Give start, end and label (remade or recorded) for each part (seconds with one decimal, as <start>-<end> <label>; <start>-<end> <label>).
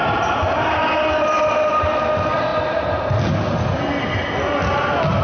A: 0.0-5.2 recorded